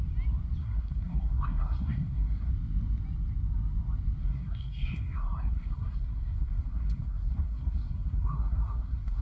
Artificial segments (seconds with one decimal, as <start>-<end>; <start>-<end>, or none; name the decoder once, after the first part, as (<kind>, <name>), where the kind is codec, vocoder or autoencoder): 0.6-2.5 (codec, SNAC); 4.2-9.2

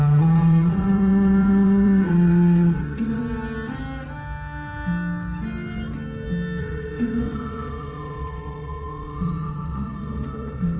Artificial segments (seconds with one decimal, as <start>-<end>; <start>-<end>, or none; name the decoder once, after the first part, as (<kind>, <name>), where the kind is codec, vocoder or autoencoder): 0.0-3.2 (vocoder, WaveNeXt); 6.6-10.8

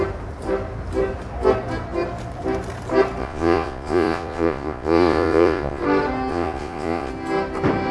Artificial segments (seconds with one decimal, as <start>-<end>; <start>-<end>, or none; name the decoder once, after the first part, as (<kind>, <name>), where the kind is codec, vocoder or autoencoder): 3.2-5.8 (vocoder, Vocos); 6.3-7.1